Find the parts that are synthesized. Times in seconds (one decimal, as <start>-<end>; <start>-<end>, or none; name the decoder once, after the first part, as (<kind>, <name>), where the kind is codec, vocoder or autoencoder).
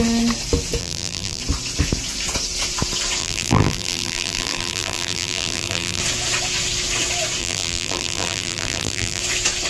0.8-1.4 (vocoder, BigVGAN v2); 3.2-6.0; 7.4-9.2